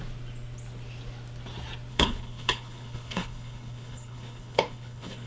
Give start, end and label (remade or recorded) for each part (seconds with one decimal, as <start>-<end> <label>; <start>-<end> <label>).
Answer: 0.0-1.9 recorded; 1.9-5.3 remade

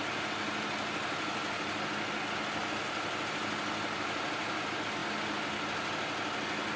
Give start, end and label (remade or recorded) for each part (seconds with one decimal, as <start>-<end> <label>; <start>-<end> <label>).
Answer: 0.0-6.8 recorded

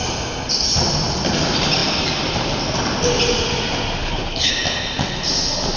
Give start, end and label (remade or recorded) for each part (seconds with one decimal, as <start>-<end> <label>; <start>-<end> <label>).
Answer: 0.0-4.0 recorded; 4.0-4.5 remade; 4.5-5.8 recorded

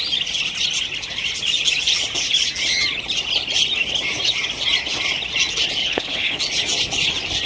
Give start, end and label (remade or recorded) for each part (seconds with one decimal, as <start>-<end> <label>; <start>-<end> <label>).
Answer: 0.0-5.8 recorded; 5.8-6.4 remade; 6.4-7.5 recorded

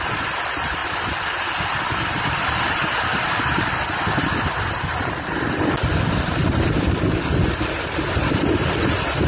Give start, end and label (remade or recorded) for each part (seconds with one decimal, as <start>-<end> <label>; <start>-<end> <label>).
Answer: 0.0-9.3 recorded